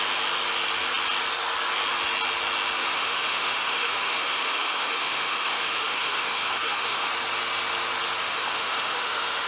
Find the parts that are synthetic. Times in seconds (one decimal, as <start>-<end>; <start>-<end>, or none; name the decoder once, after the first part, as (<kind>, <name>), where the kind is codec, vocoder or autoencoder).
2.9-7.1 (autoencoder, DAC-VAE); 8.2-9.5